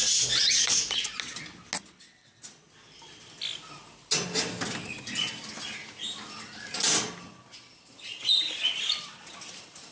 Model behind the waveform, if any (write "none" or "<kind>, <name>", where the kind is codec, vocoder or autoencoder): none